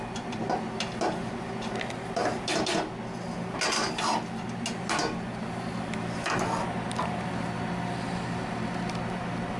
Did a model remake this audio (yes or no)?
no